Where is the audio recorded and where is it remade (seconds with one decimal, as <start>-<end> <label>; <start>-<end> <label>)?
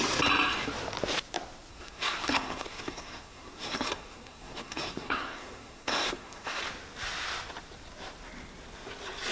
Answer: 0.0-1.7 recorded; 1.7-6.6 remade; 6.6-9.3 recorded